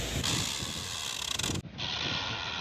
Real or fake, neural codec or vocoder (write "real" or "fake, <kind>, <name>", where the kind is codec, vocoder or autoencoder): real